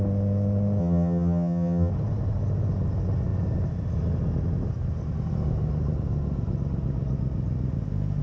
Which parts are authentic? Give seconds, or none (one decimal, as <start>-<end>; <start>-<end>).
0.0-0.8; 1.9-8.2